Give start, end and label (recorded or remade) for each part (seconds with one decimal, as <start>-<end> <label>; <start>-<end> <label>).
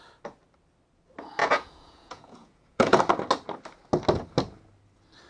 0.0-1.4 recorded; 1.4-3.0 remade; 3.0-5.3 recorded